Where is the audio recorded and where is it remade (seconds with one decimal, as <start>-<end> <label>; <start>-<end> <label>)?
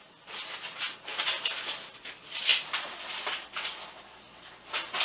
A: 0.0-5.0 recorded